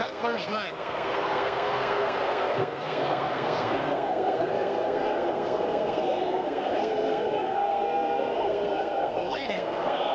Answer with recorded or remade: remade